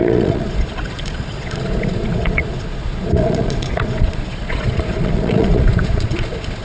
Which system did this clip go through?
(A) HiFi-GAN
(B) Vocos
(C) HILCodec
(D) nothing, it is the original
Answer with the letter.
B